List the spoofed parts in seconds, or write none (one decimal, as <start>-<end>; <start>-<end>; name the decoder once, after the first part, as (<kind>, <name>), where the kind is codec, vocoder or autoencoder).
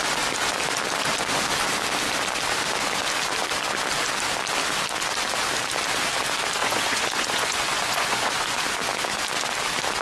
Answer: 6.6-8.6 (vocoder, Vocos)